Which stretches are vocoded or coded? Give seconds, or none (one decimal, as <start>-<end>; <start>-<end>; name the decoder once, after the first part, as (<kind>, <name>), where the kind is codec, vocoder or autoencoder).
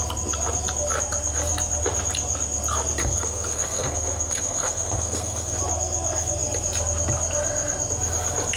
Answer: 3.0-5.6 (codec, SNAC)